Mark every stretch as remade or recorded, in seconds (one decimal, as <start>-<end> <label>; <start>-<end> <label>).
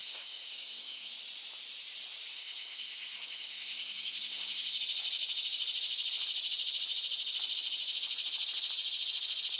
0.0-1.1 remade; 1.1-2.3 recorded; 2.3-4.8 remade; 4.8-9.6 recorded